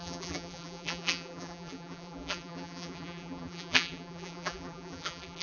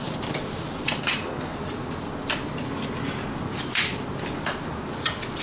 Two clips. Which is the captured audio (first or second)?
second